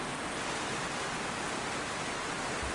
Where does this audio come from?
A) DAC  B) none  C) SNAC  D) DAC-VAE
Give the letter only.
B